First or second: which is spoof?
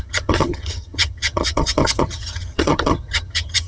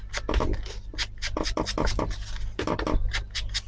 first